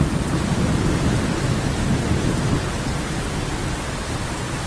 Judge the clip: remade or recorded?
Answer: recorded